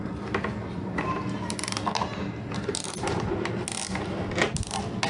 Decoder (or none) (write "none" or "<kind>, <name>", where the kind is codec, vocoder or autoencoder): none